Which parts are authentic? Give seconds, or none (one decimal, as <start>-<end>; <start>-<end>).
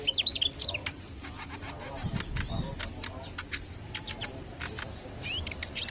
0.0-5.9